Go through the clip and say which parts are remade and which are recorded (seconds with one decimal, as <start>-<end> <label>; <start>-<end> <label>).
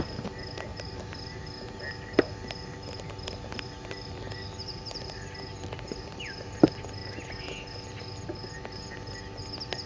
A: 0.0-0.7 recorded; 0.7-1.4 remade; 1.4-4.6 recorded; 4.6-6.6 remade; 6.6-9.9 recorded